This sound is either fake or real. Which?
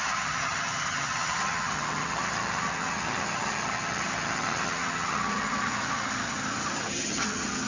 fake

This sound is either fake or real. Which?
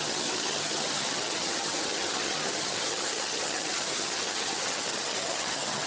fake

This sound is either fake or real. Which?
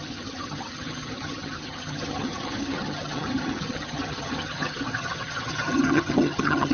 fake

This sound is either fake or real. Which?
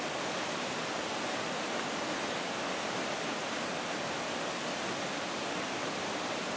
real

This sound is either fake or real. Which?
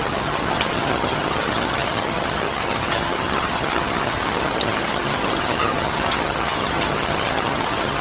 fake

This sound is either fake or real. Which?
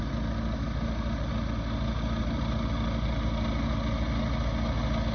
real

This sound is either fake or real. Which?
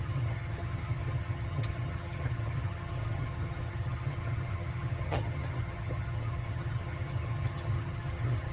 fake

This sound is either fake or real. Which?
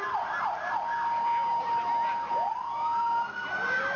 real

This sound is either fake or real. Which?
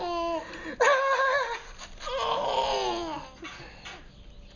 real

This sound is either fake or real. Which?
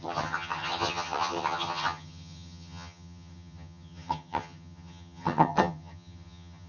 fake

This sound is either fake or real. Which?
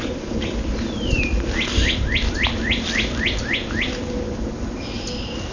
real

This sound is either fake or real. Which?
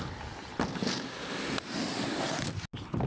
real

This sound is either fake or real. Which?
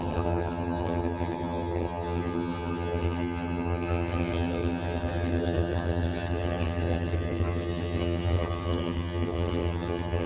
fake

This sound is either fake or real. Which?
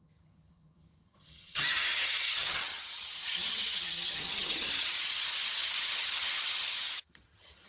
fake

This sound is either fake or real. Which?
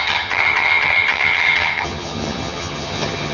fake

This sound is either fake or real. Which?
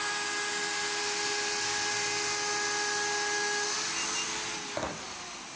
real